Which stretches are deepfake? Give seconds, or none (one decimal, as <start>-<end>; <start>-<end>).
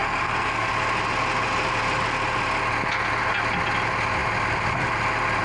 0.0-0.7